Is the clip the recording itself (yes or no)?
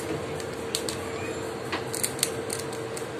yes